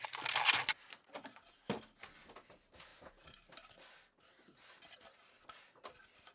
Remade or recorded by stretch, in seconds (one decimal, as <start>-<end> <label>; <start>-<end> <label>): 0.0-6.3 recorded